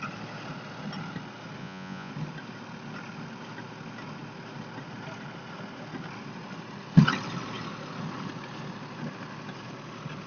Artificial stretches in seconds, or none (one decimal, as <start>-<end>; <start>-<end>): 1.6-2.1